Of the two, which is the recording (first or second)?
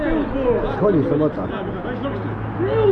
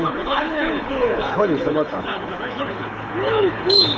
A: first